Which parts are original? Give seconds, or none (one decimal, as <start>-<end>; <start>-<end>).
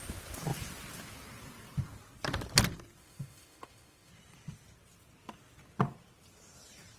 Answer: 0.0-3.0; 4.1-7.0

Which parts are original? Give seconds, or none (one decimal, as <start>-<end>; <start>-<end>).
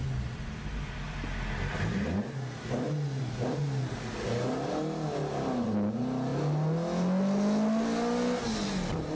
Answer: 0.0-9.1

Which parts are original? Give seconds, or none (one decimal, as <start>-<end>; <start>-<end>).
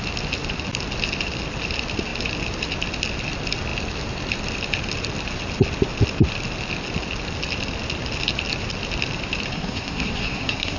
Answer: 0.0-9.5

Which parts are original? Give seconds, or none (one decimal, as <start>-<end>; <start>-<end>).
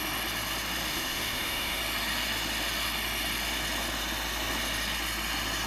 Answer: 0.0-0.9; 1.8-5.7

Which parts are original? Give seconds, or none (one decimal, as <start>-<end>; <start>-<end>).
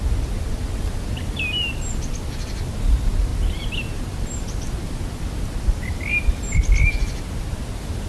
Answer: 0.0-8.1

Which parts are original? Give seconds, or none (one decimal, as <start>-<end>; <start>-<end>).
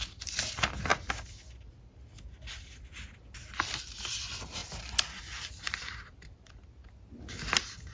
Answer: 0.0-4.6; 6.6-7.9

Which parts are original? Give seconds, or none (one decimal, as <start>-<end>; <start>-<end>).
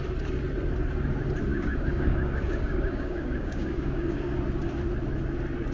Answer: 0.0-1.5; 4.3-5.7